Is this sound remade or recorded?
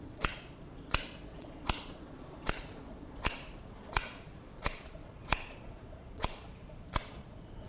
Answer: remade